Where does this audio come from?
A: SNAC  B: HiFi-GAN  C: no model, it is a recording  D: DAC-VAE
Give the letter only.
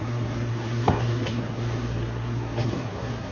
A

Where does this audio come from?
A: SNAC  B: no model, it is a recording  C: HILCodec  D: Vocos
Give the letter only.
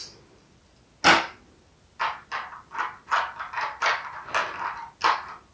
B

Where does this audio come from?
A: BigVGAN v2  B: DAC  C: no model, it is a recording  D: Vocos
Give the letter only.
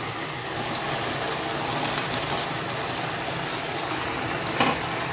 C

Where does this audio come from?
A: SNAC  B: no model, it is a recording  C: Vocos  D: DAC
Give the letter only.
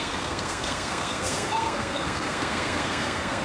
A